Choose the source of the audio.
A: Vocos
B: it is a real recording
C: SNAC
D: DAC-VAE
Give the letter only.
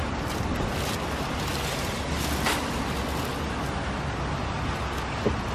B